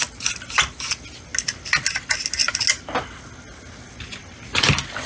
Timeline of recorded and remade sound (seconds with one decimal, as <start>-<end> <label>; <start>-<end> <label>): 0.0-5.1 recorded